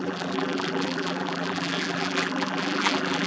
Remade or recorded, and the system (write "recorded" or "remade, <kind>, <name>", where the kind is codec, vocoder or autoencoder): remade, vocoder, BigVGAN v2